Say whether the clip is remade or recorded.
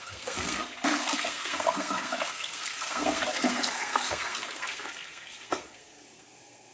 remade